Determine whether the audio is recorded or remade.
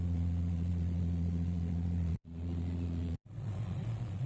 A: remade